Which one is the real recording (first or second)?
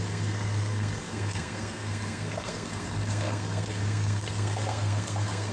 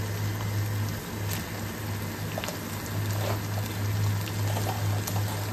second